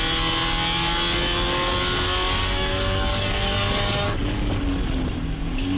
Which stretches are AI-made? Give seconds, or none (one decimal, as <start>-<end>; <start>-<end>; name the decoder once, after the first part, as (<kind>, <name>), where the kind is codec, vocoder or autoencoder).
2.4-4.6 (codec, DAC)